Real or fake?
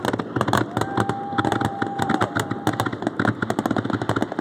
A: real